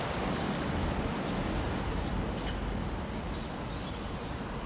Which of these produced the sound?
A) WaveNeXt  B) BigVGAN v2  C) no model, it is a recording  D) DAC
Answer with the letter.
C